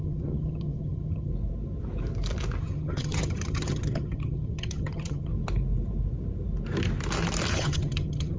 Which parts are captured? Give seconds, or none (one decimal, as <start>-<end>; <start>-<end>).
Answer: 1.3-2.6; 5.3-7.5